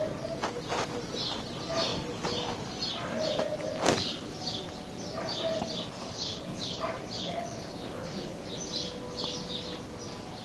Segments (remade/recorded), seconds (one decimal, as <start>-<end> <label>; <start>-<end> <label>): 0.0-6.0 recorded; 6.0-6.8 remade; 6.8-7.2 recorded; 7.2-8.4 remade; 8.4-10.4 recorded